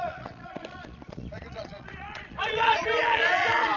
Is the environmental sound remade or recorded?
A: remade